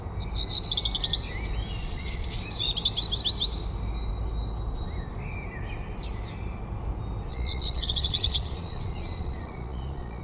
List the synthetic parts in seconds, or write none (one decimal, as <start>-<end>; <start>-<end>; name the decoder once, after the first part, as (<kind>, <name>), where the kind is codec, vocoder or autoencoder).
1.8-2.4 (vocoder, Vocos); 7.3-10.2